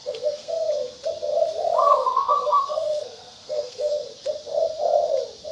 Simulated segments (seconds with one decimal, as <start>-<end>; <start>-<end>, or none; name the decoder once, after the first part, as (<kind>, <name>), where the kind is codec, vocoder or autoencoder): 0.0-0.7 (codec, SNAC); 1.8-3.9